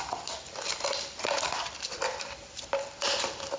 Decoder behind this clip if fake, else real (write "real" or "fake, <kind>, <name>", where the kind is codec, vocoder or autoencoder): real